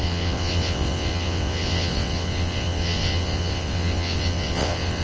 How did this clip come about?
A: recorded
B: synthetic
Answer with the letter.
B